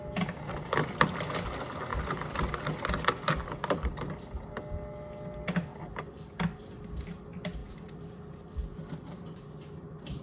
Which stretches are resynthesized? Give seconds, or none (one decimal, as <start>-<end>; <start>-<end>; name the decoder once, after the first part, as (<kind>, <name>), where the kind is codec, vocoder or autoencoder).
5.7-6.8 (vocoder, BigVGAN v2); 7.6-9.5